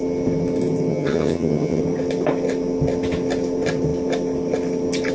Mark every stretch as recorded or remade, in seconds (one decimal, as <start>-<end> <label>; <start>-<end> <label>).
0.0-0.9 recorded; 0.9-1.8 remade; 1.8-5.1 recorded